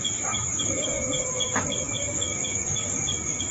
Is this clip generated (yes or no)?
yes